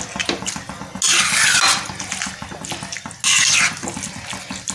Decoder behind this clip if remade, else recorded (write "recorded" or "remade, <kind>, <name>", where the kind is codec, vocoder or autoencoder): recorded